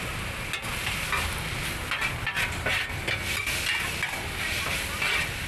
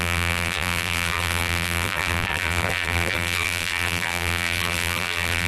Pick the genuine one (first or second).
first